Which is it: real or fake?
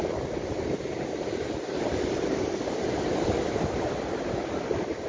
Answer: real